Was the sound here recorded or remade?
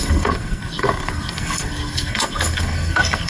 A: remade